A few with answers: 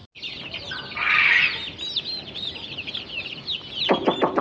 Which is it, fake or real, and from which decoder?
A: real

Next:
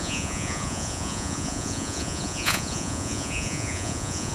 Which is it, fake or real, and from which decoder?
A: fake, vocoder, Vocos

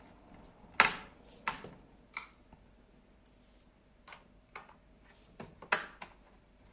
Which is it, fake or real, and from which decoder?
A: real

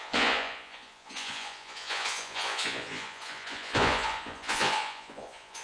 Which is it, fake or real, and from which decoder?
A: fake, vocoder, Vocos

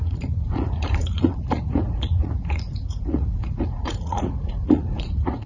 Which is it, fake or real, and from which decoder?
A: fake, vocoder, Vocos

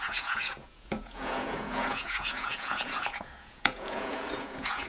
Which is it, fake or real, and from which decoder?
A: fake, vocoder, Vocos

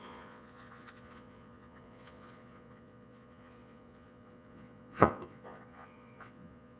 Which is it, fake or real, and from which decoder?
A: fake, vocoder, Vocos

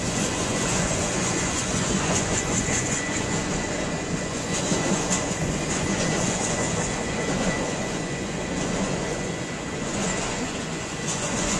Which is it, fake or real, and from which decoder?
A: fake, vocoder, Vocos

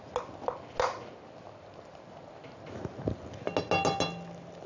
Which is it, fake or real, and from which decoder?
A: real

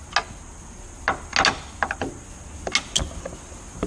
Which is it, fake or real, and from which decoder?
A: real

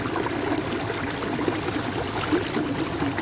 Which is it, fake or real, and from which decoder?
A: real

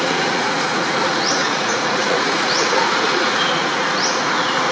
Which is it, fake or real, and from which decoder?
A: fake, vocoder, Vocos